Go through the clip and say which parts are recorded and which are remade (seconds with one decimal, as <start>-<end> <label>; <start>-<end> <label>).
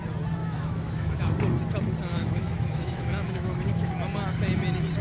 0.0-0.4 recorded; 0.4-1.2 remade; 1.2-2.1 recorded; 2.1-3.9 remade; 3.9-5.0 recorded